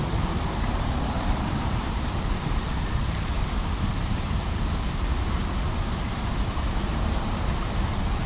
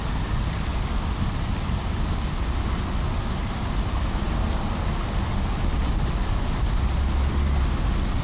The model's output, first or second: first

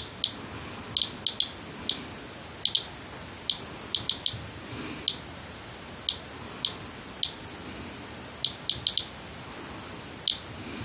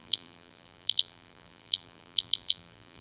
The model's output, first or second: second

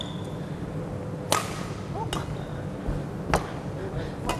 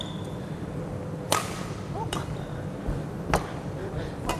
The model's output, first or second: second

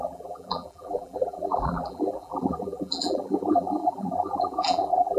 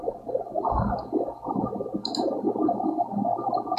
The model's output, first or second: first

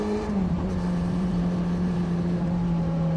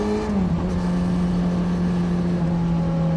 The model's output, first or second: first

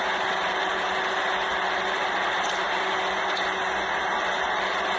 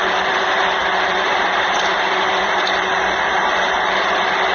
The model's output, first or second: second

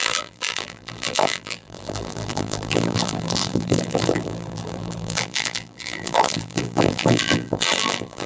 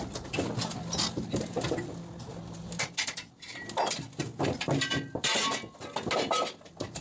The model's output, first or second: first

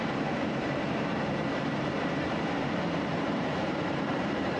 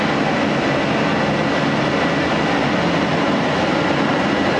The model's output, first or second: first